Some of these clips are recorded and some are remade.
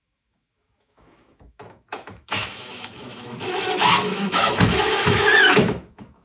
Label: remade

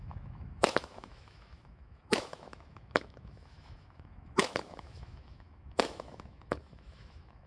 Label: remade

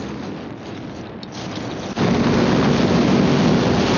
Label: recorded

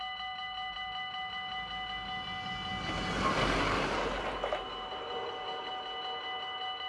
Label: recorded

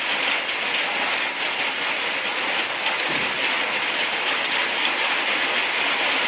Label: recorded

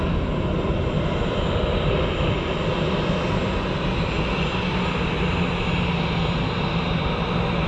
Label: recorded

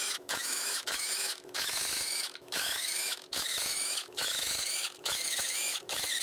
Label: remade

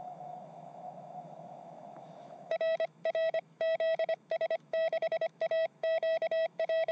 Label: remade